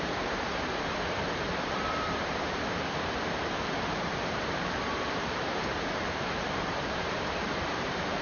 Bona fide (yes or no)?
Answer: no